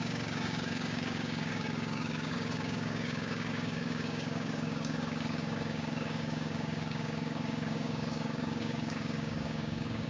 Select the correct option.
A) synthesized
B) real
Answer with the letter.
A